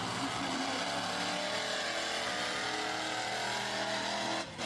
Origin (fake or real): real